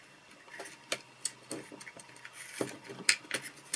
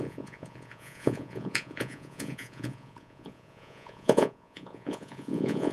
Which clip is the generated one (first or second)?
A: second